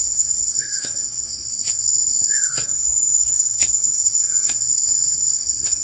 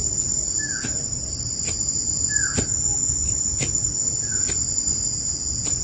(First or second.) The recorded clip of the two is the second